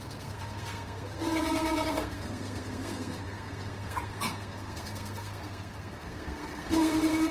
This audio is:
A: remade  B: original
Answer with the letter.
A